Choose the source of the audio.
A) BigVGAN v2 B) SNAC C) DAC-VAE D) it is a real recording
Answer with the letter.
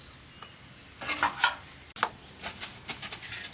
D